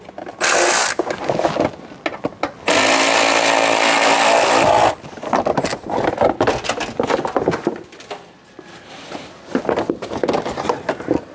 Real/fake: real